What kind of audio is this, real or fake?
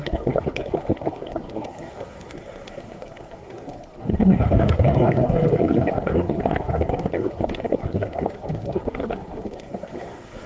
fake